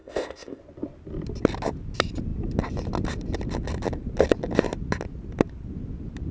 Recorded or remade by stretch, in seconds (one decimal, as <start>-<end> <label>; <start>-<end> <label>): 0.0-0.6 remade; 0.6-6.3 recorded